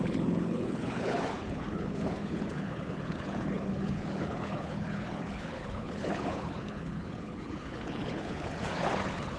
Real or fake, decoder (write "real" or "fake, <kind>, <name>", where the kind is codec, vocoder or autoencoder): fake, codec, HILCodec